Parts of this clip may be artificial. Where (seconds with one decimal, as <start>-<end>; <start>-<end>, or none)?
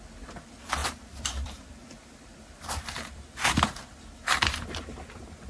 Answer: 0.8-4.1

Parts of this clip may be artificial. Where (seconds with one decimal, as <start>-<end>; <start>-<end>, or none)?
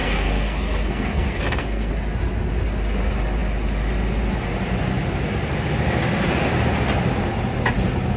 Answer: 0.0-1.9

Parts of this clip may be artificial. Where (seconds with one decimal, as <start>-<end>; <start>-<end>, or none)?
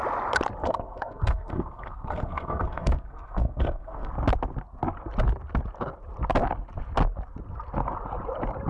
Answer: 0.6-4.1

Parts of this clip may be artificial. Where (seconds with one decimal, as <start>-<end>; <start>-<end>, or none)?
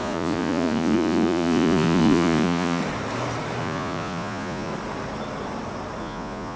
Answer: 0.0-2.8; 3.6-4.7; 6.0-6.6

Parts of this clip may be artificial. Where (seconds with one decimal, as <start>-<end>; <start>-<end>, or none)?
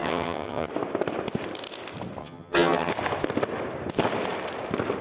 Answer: 0.0-0.7; 2.2-2.9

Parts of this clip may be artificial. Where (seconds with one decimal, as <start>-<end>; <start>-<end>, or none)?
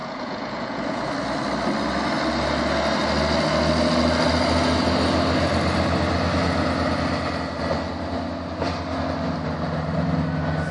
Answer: 0.0-1.1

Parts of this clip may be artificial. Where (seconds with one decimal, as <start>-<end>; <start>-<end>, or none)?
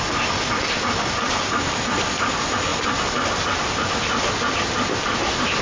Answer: none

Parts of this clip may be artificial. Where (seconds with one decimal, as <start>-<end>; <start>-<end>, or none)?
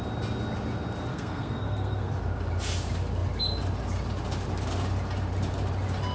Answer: 1.1-2.1